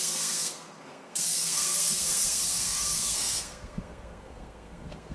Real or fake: fake